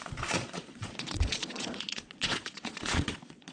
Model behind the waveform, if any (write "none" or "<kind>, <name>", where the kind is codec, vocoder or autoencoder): vocoder, Vocos